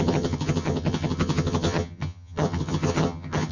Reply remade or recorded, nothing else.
remade